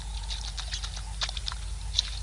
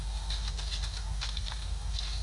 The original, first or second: first